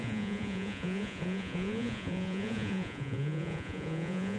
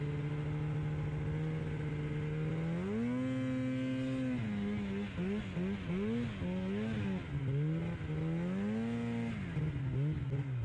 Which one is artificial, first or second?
first